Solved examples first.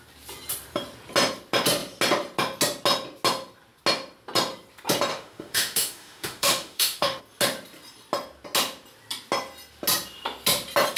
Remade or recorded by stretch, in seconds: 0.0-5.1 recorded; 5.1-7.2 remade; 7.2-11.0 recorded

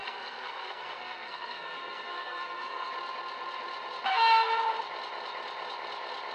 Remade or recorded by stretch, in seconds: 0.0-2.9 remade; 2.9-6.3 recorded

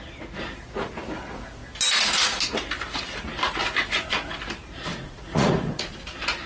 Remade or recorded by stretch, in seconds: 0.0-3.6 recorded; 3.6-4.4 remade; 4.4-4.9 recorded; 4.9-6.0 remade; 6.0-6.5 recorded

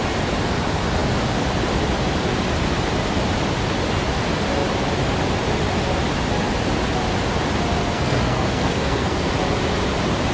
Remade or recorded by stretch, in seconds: 0.0-7.8 recorded; 7.8-9.3 remade; 9.3-10.3 recorded

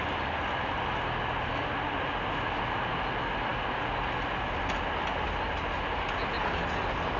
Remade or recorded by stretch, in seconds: 0.0-7.2 recorded

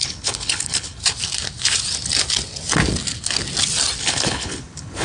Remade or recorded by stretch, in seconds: 0.0-1.0 remade; 1.0-4.0 recorded; 4.0-5.0 remade

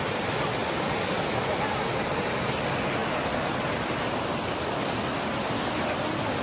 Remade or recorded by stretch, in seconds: 0.0-6.4 recorded